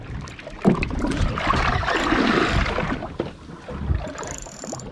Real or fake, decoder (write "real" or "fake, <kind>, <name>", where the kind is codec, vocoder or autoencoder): real